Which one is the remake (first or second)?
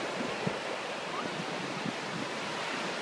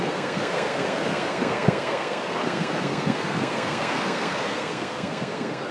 second